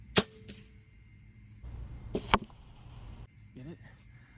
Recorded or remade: recorded